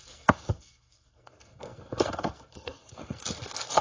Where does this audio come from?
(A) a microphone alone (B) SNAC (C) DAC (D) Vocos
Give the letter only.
B